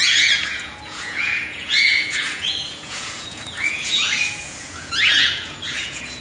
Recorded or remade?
remade